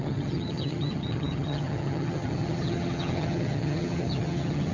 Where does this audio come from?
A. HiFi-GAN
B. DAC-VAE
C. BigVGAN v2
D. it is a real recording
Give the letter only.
A